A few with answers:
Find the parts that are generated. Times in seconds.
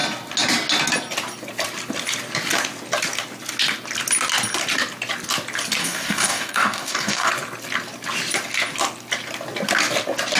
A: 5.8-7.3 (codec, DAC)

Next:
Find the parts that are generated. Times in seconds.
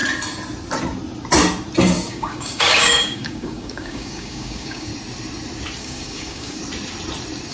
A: 2.1-4.9 (codec, DAC); 5.8-6.6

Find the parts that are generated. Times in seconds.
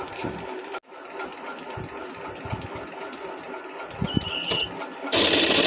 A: none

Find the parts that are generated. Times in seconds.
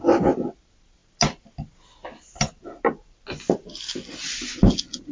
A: none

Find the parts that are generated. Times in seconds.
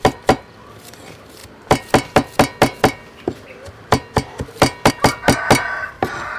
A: none